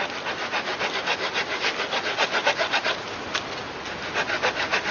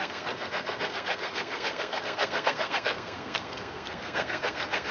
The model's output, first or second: second